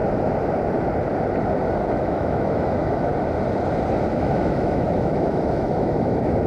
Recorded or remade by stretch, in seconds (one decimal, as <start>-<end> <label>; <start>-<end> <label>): 0.0-1.9 recorded; 1.9-3.1 remade; 3.1-4.1 recorded; 4.1-6.5 remade